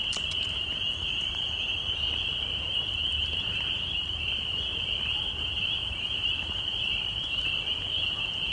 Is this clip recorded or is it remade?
remade